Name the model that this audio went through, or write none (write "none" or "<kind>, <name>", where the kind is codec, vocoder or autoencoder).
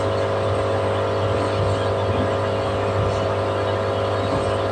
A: none